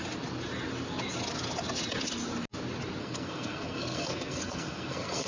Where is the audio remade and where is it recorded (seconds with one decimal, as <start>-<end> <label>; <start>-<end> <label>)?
0.0-3.0 recorded; 3.0-5.3 remade